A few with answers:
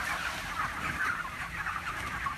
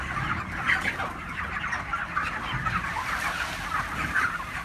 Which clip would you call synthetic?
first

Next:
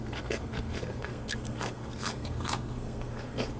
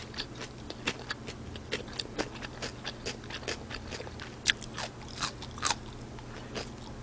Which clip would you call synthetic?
first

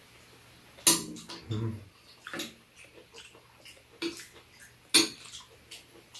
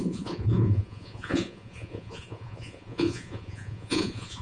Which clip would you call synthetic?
second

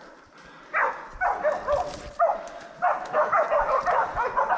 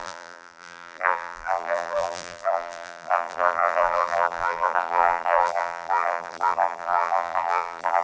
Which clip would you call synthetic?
second